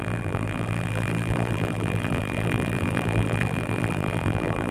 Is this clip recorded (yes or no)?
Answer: no